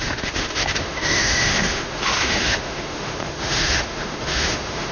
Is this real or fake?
fake